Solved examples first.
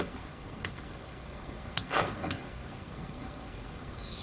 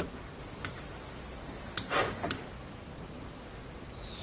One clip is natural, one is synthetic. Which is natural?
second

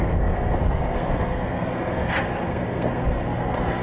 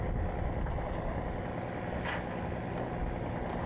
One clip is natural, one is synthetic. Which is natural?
second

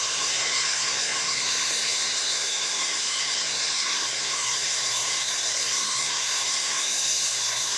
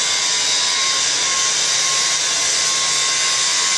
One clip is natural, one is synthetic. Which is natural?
second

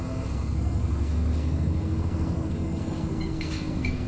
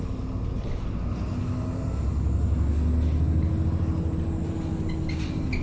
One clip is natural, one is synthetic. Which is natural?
second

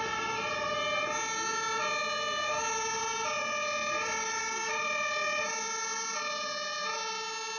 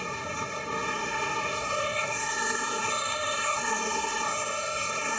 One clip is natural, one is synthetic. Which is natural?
first